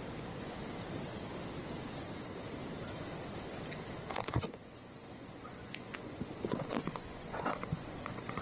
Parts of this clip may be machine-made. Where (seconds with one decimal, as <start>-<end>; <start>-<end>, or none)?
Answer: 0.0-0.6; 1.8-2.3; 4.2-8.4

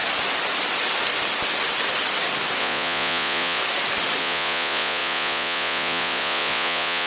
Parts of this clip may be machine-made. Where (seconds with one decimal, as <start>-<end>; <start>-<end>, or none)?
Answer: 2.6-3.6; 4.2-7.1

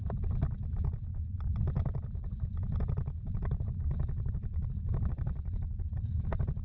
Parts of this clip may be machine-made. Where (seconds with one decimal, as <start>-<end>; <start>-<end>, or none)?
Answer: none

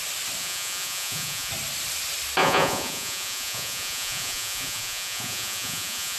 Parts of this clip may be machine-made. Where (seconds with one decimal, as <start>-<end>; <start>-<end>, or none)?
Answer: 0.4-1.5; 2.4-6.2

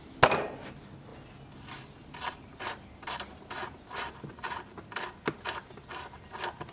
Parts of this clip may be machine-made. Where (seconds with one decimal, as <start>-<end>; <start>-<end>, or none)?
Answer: none